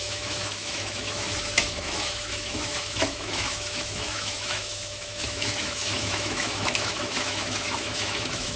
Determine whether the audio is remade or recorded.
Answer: remade